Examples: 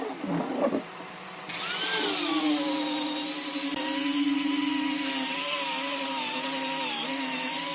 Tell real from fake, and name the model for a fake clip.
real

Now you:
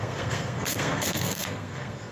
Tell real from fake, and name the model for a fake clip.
fake, codec, SNAC